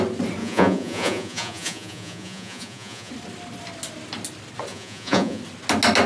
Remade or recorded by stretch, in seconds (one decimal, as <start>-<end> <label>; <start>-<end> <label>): 0.0-0.4 recorded; 0.4-3.1 remade; 3.1-4.7 recorded; 4.7-5.4 remade; 5.4-6.1 recorded